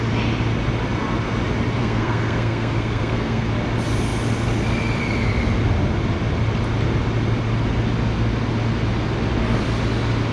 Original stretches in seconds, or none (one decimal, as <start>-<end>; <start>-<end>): 0.0-1.8; 3.5-10.3

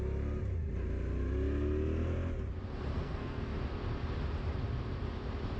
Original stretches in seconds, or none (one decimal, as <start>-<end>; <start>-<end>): 0.0-2.9; 3.5-5.6

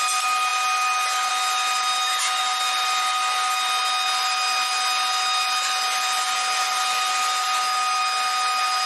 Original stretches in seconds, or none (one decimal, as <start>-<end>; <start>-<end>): 0.0-8.9

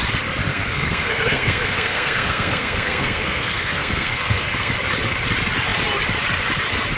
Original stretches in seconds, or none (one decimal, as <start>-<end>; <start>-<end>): 0.0-0.5; 4.7-7.0